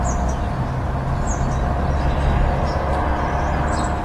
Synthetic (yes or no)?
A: no